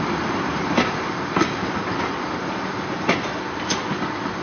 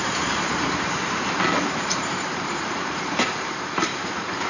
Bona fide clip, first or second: first